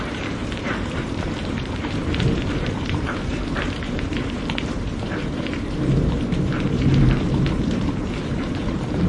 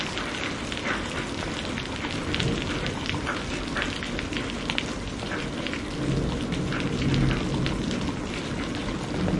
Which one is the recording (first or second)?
second